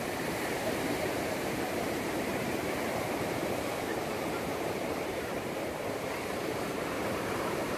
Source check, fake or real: fake